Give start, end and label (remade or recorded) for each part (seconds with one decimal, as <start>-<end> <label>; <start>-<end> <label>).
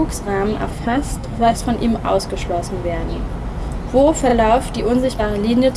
0.0-0.7 recorded; 0.7-1.6 remade; 1.6-5.8 recorded